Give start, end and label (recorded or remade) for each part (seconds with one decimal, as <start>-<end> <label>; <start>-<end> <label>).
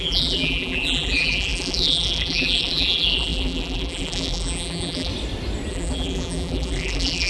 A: 0.0-5.1 remade; 5.1-5.7 recorded; 5.7-7.3 remade